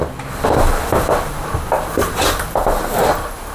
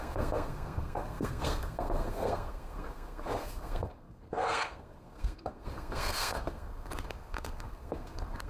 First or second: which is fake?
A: second